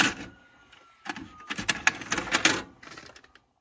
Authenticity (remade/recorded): recorded